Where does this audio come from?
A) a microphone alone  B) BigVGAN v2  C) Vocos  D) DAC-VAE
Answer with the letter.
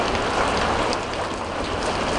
A